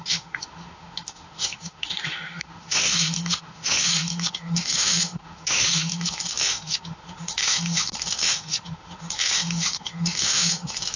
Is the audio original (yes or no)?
no